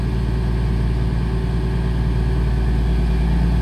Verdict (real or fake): real